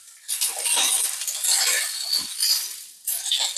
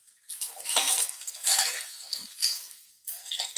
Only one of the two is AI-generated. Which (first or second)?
second